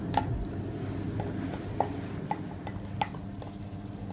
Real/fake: real